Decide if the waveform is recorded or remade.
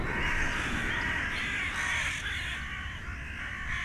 recorded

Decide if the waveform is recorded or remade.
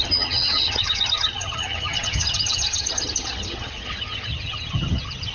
remade